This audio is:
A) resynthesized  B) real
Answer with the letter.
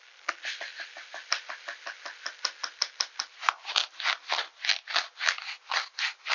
B